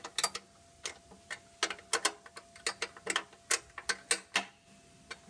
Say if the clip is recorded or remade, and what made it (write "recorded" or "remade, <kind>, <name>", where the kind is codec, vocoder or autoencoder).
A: recorded